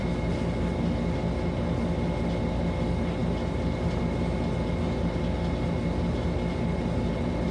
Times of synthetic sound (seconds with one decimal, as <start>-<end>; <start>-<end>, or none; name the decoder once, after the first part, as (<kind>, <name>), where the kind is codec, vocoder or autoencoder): none